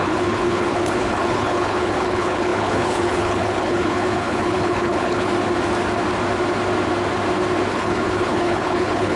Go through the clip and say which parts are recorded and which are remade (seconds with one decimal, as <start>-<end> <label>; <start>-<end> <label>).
0.0-5.3 remade; 5.3-7.7 recorded; 7.7-9.2 remade